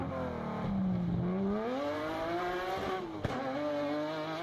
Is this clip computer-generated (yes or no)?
no